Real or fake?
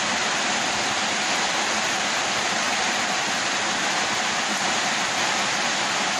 real